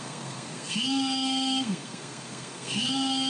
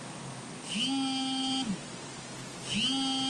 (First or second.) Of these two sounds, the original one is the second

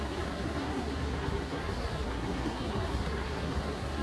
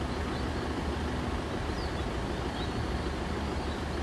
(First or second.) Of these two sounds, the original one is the second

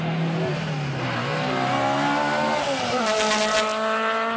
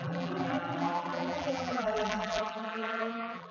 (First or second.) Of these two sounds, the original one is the first